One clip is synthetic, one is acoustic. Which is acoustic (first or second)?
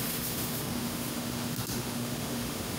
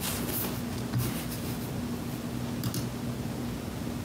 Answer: second